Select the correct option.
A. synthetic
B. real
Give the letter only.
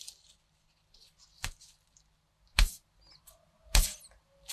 B